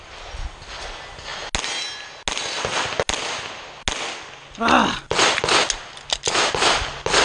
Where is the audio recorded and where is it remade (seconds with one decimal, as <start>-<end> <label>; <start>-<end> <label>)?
0.0-7.2 recorded